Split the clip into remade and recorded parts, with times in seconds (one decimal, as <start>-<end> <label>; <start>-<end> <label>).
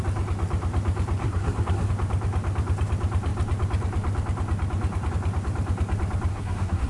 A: 0.0-1.2 recorded; 1.2-1.9 remade; 1.9-6.3 recorded; 6.3-6.9 remade